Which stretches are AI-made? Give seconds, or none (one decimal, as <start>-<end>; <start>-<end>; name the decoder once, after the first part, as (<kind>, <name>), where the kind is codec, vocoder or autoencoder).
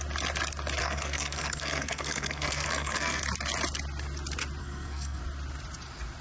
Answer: 0.8-3.2 (codec, SNAC); 4.6-5.2